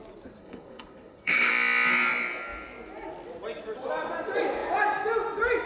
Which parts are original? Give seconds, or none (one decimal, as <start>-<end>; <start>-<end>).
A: 0.0-0.4; 1.5-5.7